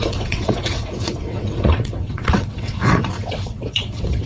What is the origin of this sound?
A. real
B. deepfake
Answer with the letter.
B